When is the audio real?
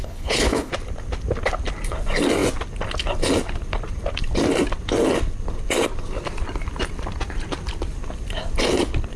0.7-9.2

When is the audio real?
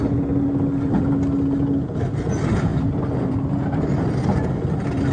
0.0-5.1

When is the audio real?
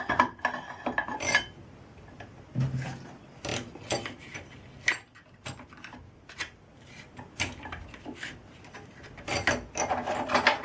0.0-10.6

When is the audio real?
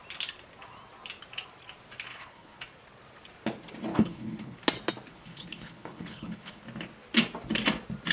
0.0-2.1; 2.6-3.9; 4.6-5.1; 6.6-8.1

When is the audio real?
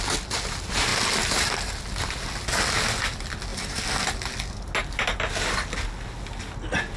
0.0-7.0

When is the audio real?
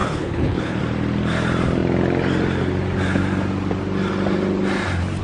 0.8-5.2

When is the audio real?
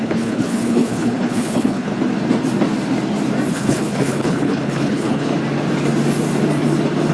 1.9-3.5; 5.3-7.1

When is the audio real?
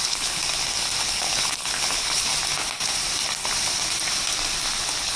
0.4-1.0; 2.3-4.8